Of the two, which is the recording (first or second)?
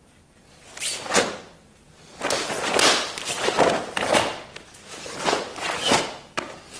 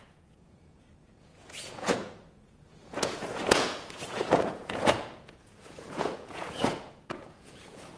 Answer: first